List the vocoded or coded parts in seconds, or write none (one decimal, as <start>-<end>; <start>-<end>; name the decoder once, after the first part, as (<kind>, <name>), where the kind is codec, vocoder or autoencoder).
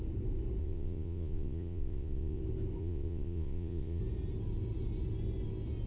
0.6-2.4 (vocoder, Vocos); 2.8-4.0